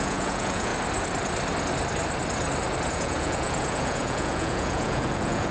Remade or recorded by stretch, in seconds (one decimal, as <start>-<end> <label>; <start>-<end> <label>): 0.0-0.7 remade; 0.7-2.9 recorded; 2.9-5.5 remade